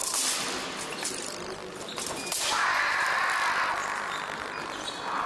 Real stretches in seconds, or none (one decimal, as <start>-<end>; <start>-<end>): 0.0-5.3